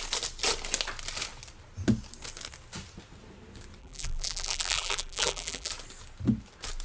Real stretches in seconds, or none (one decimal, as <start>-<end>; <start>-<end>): 0.0-3.8; 5.7-6.8